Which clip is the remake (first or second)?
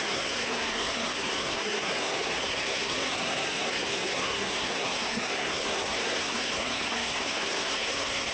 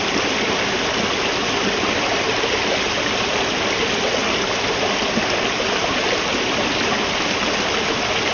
first